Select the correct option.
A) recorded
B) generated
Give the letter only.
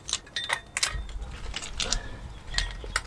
A